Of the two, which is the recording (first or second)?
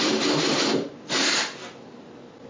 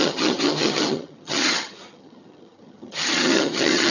first